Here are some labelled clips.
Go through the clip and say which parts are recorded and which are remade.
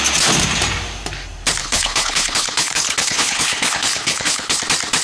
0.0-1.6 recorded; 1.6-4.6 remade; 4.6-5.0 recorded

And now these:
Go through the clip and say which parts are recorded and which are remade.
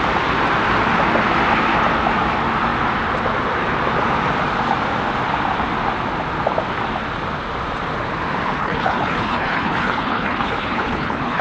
0.0-8.6 recorded; 8.6-11.4 remade